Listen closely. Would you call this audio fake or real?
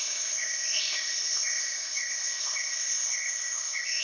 fake